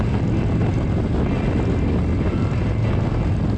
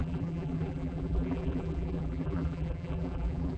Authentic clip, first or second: first